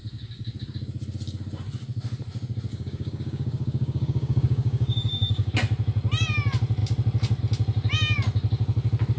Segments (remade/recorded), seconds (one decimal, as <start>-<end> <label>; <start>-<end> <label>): 0.0-2.7 recorded; 2.7-5.5 remade; 5.5-9.2 recorded